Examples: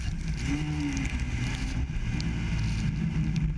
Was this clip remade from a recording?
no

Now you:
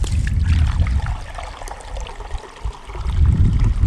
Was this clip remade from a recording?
no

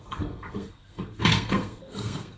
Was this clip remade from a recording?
yes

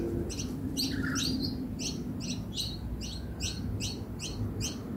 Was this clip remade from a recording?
no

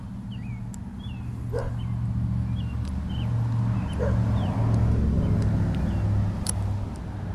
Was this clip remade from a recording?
no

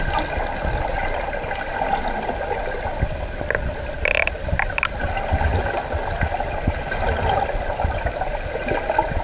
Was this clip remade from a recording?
no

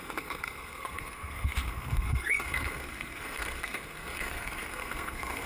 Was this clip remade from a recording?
yes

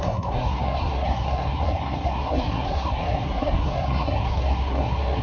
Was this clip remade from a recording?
yes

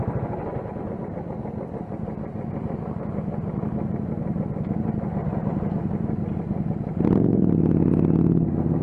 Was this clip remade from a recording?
no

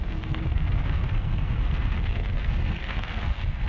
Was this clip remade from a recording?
yes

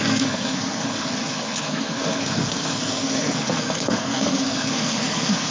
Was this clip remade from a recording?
yes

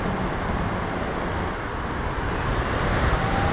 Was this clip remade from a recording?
no